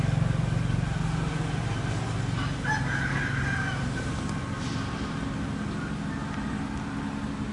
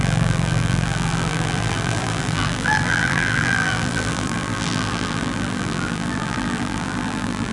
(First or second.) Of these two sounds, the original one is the first